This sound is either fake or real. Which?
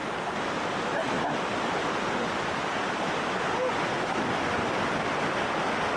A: real